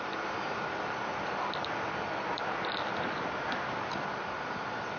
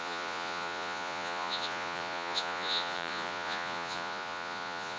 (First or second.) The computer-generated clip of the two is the second